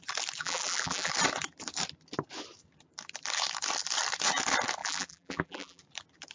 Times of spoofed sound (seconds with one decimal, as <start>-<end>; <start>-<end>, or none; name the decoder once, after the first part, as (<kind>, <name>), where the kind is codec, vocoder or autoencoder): 0.4-1.1 (vocoder, BigVGAN v2); 4.8-5.8